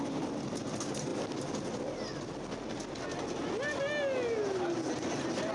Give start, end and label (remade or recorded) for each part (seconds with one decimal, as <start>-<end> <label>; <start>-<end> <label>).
0.0-5.5 recorded